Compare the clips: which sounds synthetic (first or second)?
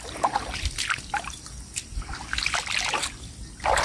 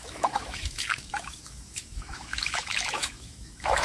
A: second